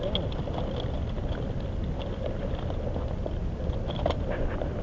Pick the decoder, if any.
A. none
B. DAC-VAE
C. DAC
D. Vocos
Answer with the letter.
A